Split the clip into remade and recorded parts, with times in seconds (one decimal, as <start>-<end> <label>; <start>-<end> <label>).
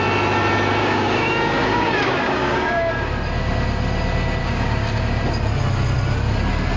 0.0-0.8 recorded; 0.8-2.9 remade; 2.9-4.4 recorded; 4.4-5.2 remade; 5.2-6.8 recorded